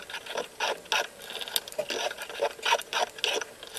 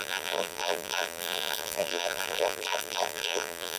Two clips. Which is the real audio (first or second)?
first